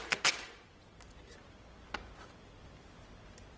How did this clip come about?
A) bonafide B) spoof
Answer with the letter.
A